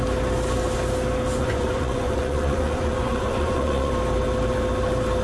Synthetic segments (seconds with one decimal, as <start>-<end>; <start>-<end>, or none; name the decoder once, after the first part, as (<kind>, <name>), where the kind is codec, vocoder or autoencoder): 1.4-3.9 (vocoder, Vocos)